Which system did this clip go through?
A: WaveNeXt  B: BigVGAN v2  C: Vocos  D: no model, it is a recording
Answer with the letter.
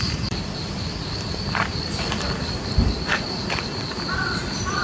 B